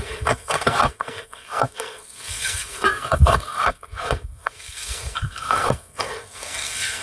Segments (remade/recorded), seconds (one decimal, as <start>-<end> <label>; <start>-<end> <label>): 0.0-7.0 remade